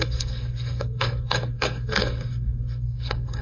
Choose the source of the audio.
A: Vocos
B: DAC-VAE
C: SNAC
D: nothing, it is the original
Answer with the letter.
C